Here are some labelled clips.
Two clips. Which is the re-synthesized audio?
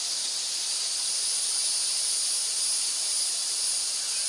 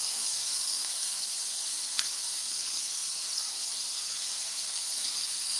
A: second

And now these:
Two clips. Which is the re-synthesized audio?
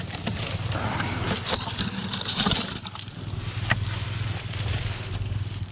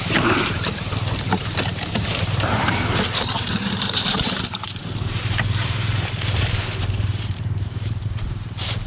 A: second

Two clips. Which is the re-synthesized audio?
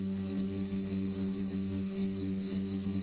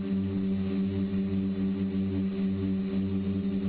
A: first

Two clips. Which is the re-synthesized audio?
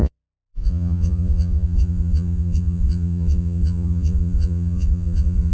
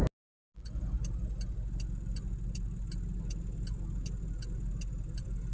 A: first